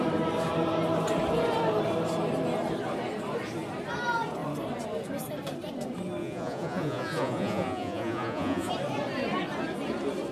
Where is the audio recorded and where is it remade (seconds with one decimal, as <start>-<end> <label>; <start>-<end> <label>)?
0.0-6.2 recorded; 6.2-8.7 remade; 8.7-10.3 recorded